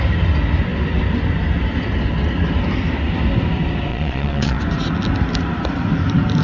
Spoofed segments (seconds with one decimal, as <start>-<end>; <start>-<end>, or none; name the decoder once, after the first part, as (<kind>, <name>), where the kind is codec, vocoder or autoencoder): 3.9-4.6 (vocoder, Vocos)

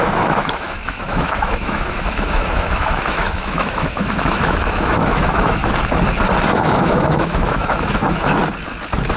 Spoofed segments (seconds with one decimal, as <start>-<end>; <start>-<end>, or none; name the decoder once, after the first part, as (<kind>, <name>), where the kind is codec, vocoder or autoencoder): 0.0-5.6 (autoencoder, DAC-VAE); 6.6-8.4